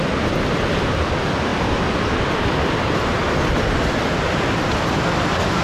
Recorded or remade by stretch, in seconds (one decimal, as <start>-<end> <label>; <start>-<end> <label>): 0.0-5.6 recorded